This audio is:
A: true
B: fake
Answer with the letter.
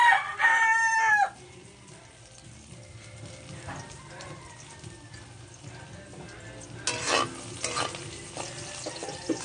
A